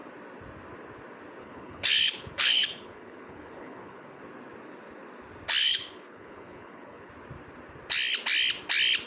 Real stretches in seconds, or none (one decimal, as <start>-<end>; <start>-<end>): 0.0-1.4; 4.2-5.6; 7.1-9.1